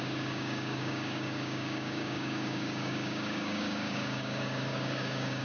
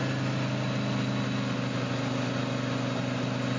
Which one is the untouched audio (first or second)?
second